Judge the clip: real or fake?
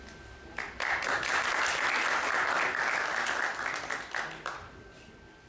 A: real